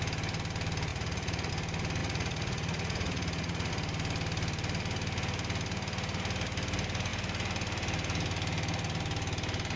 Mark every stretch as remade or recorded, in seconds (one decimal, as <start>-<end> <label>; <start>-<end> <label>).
0.0-0.9 recorded; 0.9-1.5 remade; 1.5-2.0 recorded; 2.0-3.7 remade; 3.7-9.8 recorded